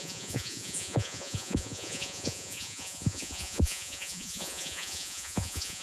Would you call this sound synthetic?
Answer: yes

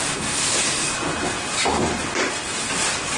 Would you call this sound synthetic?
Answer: no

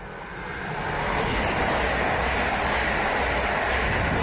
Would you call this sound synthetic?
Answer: no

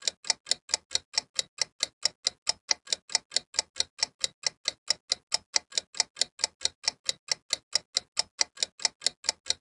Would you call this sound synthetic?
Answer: no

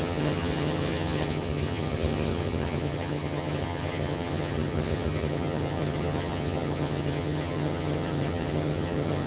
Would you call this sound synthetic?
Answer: yes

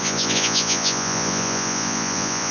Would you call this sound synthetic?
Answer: yes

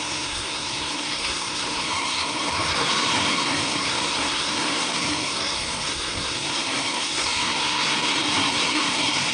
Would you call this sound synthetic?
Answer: yes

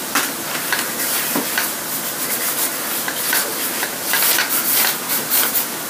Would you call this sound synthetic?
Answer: no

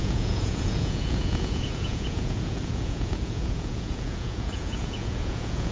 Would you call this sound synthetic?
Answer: yes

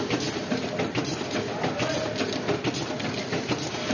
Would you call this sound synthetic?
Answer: no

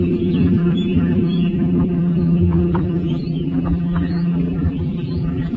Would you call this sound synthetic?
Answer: yes